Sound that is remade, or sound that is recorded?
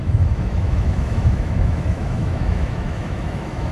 remade